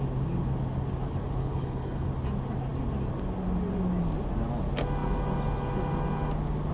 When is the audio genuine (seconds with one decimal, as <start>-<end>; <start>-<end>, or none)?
0.0-1.4; 2.1-6.7